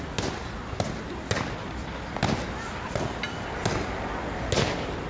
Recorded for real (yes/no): yes